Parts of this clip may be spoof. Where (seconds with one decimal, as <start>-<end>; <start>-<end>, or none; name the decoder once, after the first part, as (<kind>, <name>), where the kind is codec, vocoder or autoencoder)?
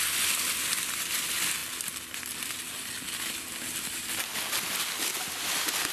none